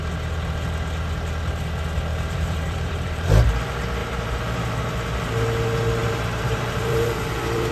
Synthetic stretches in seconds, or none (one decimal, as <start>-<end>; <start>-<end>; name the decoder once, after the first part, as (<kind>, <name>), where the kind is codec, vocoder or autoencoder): 2.1-3.3 (vocoder, BigVGAN v2); 4.0-4.7; 6.0-7.7